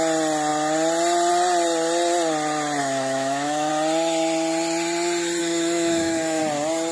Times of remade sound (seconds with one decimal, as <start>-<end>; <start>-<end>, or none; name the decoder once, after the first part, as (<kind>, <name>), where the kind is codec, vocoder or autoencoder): 2.8-3.7 (autoencoder, DAC-VAE); 5.4-6.4